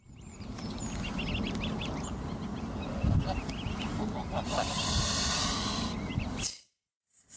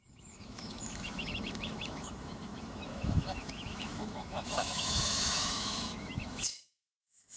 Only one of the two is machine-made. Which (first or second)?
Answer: second